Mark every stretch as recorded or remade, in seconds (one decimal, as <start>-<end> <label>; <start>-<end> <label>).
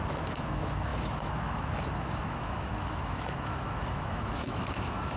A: 0.0-5.2 remade